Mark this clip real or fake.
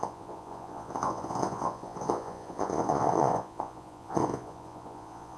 fake